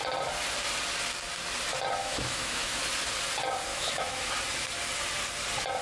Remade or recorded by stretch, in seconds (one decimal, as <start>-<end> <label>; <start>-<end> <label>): 0.0-2.0 recorded; 2.0-2.8 remade; 2.8-3.7 recorded; 3.7-4.3 remade; 4.3-5.8 recorded